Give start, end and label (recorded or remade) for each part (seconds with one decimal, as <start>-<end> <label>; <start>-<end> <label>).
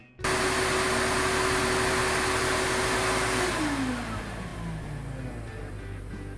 0.0-6.4 recorded